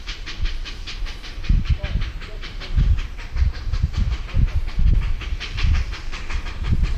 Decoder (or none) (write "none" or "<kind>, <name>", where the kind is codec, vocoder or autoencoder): vocoder, BigVGAN v2